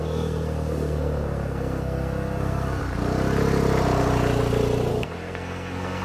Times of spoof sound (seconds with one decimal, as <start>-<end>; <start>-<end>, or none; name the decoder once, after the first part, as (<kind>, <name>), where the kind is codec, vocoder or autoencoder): 0.0-2.8 (codec, SNAC); 4.9-6.0